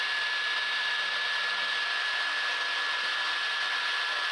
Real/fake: fake